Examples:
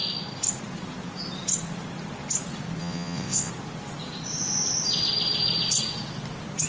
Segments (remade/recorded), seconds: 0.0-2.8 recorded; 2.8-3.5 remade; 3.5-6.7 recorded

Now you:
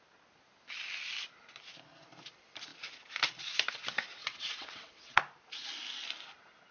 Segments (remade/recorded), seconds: 0.0-4.2 recorded; 4.2-5.2 remade; 5.2-6.7 recorded